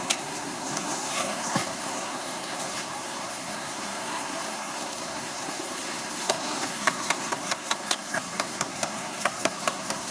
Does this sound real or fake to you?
fake